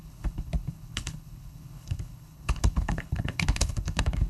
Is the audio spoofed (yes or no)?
yes